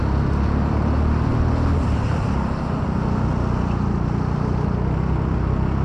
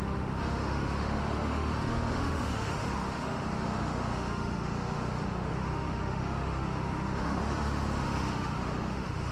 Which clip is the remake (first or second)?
second